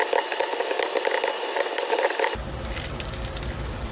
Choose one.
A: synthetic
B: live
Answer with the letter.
A